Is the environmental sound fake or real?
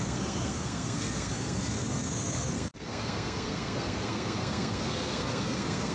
fake